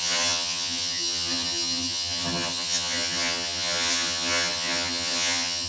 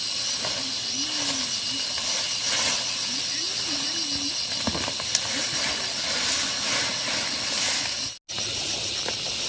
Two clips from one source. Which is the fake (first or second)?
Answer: first